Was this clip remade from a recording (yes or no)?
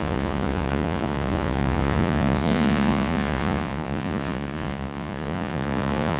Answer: yes